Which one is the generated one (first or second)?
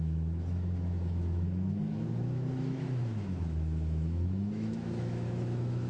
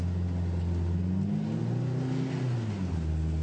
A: first